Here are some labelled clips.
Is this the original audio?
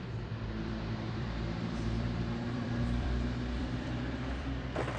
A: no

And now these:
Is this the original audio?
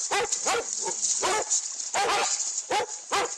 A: yes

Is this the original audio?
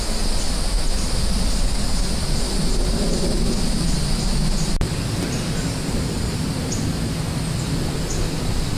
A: yes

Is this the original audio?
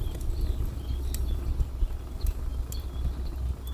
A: yes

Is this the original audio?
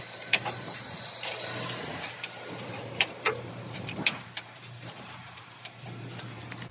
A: no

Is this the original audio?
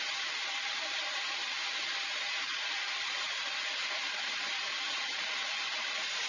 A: no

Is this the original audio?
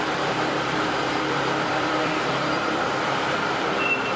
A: no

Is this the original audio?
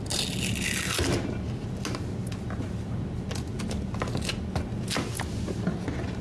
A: yes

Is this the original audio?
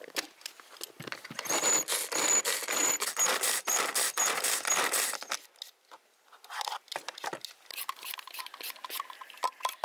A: yes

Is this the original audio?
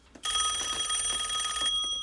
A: no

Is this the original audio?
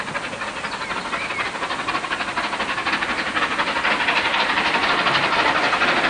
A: yes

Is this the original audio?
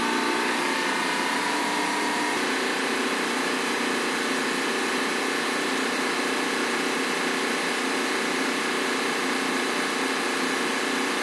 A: yes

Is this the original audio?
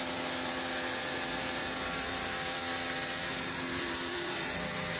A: no